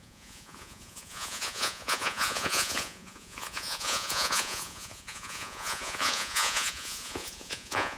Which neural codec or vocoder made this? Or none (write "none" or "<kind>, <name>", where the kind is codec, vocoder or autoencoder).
vocoder, Vocos